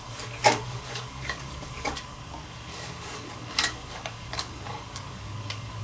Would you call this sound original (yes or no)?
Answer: no